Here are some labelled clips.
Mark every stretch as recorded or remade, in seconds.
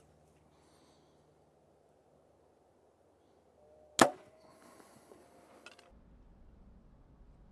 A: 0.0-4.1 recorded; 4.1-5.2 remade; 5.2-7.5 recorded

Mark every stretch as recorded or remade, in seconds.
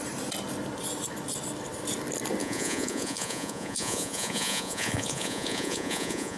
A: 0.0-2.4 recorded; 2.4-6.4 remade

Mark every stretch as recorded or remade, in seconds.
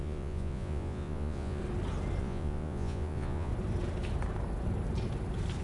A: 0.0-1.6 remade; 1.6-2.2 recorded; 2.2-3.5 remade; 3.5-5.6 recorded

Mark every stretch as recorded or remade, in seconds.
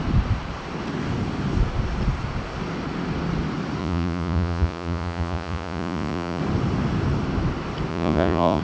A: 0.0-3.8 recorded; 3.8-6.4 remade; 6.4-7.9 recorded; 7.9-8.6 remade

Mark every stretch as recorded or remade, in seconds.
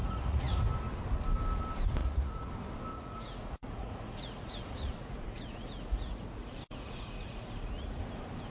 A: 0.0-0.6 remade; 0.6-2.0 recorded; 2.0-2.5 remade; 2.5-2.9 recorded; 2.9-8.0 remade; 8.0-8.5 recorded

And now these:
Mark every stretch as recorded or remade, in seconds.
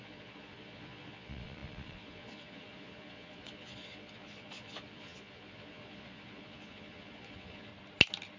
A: 0.0-7.7 remade; 7.7-8.4 recorded